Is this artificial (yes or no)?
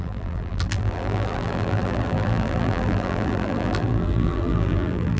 yes